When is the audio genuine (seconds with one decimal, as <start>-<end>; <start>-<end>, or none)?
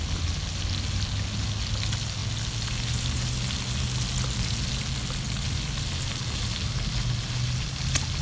0.0-8.2